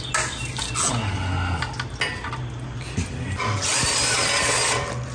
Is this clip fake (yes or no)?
no